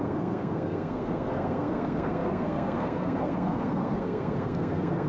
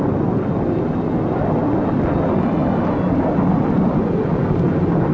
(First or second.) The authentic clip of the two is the second